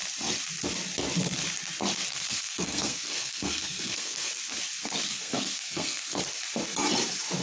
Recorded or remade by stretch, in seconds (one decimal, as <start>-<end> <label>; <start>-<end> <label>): 0.0-2.1 recorded; 2.1-4.3 remade; 4.3-5.1 recorded; 5.1-6.2 remade; 6.2-7.4 recorded